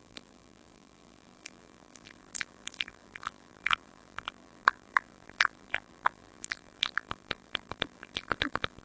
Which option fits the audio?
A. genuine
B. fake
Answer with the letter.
B